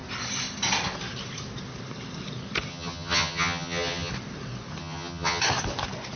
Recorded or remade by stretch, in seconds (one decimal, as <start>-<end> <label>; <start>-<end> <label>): 0.0-2.7 recorded; 2.7-4.1 remade; 4.1-4.8 recorded; 4.8-5.4 remade; 5.4-6.2 recorded